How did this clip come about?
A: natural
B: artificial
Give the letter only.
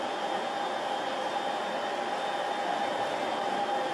A